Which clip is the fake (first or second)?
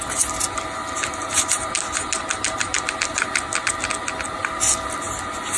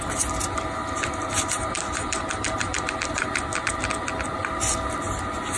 second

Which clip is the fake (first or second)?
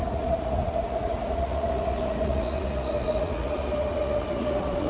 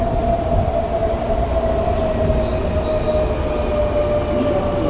first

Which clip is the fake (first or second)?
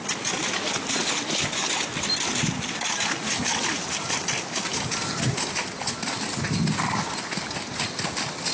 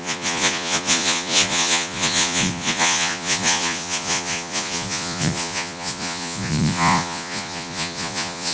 second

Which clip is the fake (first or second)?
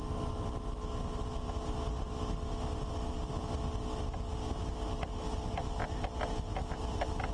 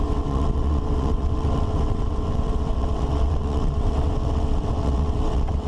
second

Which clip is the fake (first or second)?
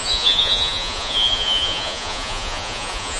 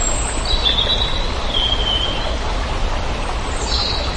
first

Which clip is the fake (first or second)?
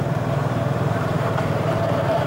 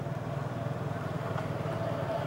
first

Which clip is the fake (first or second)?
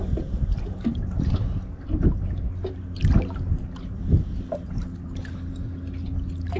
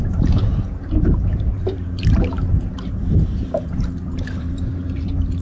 second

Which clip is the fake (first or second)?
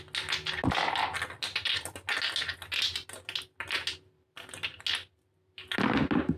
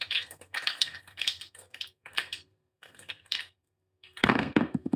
second